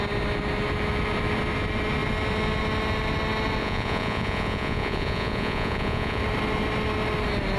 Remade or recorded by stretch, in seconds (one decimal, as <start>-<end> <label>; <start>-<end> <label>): 0.0-3.6 recorded; 3.6-6.2 remade; 6.2-7.6 recorded